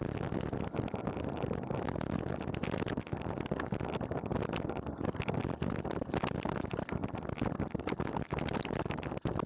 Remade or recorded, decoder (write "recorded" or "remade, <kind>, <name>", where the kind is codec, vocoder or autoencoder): recorded